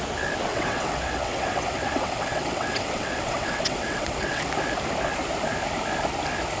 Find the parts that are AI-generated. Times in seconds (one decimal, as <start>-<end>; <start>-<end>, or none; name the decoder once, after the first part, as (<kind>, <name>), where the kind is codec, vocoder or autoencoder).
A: 0.5-4.5 (vocoder, WaveNeXt)